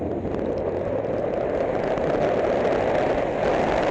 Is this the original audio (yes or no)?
yes